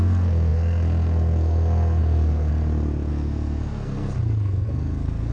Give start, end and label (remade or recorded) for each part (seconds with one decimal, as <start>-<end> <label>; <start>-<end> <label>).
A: 0.0-2.5 remade; 2.5-3.1 recorded; 3.1-5.3 remade